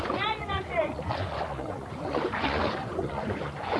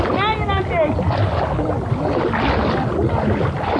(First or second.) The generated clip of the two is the first